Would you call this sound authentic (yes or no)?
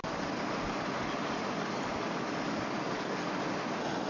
yes